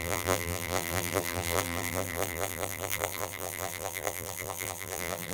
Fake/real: fake